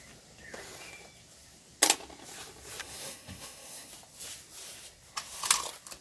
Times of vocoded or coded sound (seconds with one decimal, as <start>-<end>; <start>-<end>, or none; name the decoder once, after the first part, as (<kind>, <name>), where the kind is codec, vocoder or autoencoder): 2.8-3.9 (codec, SNAC)

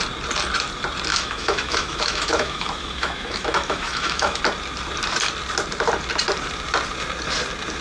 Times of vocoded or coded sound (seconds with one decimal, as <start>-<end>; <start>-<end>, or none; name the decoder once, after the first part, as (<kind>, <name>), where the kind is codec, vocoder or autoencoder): 1.1-4.4 (autoencoder, DAC-VAE)

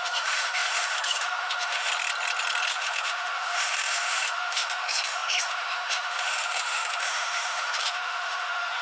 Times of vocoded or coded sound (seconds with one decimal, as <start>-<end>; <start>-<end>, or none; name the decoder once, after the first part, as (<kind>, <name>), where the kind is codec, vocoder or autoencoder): 0.0-1.9 (autoencoder, DAC-VAE); 2.7-8.8

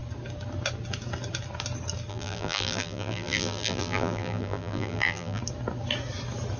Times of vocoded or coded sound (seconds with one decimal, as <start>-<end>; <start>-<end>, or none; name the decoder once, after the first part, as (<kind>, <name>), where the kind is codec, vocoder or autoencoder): 2.1-5.4 (vocoder, BigVGAN v2)

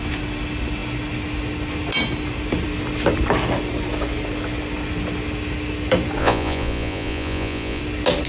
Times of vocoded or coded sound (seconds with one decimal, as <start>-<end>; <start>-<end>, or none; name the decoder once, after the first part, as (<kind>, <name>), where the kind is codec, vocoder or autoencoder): 6.2-7.8 (vocoder, Vocos)

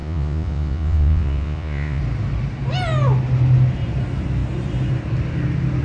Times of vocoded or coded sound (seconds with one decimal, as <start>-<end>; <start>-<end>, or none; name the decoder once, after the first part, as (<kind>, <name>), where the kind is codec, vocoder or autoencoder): 0.0-2.0 (vocoder, Vocos)

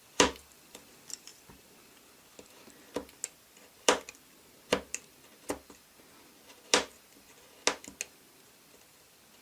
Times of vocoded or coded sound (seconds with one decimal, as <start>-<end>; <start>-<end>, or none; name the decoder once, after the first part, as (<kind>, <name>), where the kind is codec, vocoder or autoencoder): none

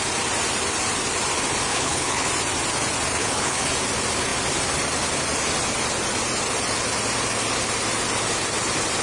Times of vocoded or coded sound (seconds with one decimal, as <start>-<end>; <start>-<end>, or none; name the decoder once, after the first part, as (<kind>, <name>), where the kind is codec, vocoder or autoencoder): 1.7-2.3 (codec, HILCodec); 3.2-3.7